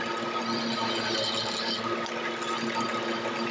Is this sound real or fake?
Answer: real